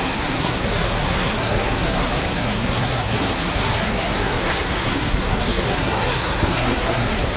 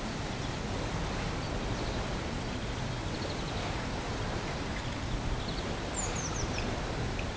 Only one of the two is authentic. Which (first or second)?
second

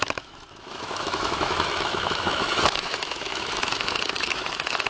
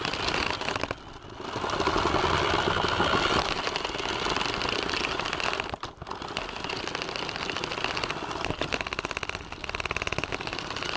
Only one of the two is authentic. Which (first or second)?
second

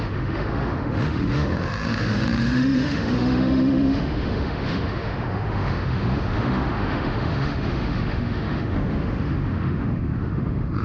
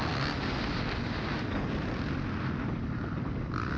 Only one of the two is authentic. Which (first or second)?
second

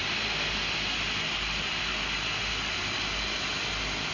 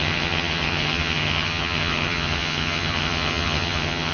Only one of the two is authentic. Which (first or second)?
first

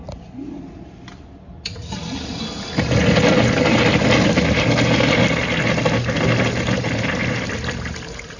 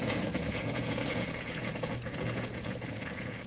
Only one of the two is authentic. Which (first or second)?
first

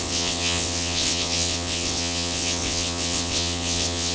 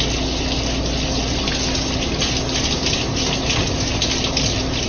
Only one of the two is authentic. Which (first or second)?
second